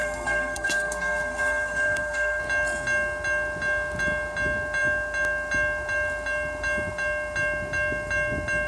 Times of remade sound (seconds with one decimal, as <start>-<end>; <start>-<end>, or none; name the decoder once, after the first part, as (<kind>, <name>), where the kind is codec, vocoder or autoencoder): 0.0-2.4 (codec, SNAC)

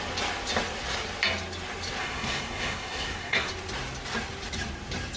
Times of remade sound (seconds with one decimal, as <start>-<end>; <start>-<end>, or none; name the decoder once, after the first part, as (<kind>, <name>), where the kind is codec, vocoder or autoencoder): 2.0-3.5 (codec, SNAC)